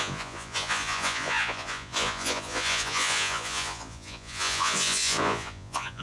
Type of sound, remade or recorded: remade